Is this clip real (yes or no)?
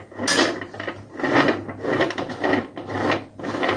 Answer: yes